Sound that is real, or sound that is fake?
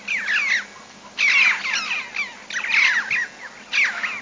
real